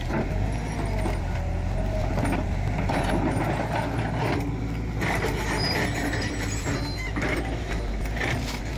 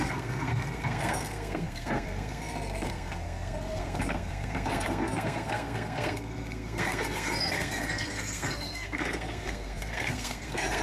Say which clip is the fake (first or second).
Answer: second